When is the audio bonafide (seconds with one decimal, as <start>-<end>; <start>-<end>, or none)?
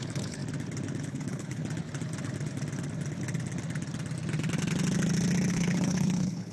0.4-1.0; 1.6-5.5